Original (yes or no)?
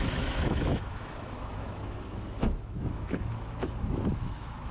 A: no